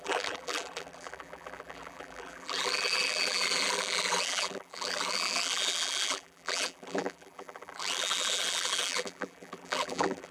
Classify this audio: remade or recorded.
remade